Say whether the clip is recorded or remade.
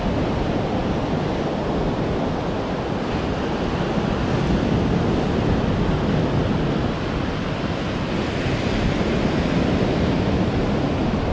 recorded